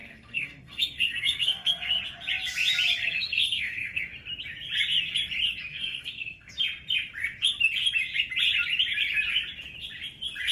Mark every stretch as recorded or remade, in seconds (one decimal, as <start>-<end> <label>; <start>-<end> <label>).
0.0-2.0 remade; 2.0-3.0 recorded; 3.0-4.0 remade; 4.0-5.7 recorded; 5.7-6.5 remade; 6.5-10.5 recorded